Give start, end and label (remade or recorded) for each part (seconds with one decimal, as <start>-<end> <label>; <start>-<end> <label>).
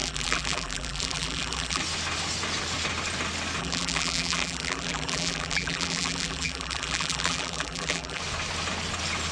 0.0-1.8 remade; 1.8-3.6 recorded; 3.6-8.2 remade; 8.2-9.3 recorded